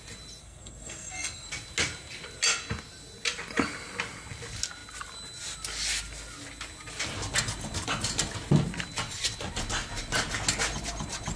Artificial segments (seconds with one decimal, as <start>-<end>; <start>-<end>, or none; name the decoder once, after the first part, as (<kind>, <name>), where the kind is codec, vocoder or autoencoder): 0.4-1.5 (codec, SNAC)